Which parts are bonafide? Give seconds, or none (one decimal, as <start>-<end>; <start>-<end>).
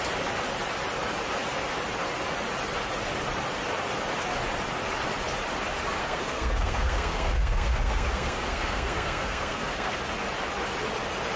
0.0-6.0; 10.0-11.4